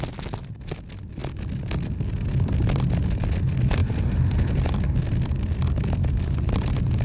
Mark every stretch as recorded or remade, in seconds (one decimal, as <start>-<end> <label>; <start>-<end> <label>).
0.0-7.0 recorded